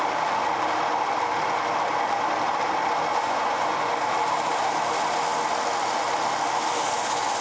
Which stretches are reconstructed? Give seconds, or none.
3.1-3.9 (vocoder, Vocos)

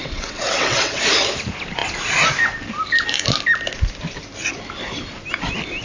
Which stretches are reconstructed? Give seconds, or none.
0.0-1.0 (vocoder, WaveNeXt)